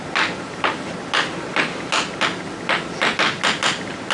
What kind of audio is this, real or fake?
real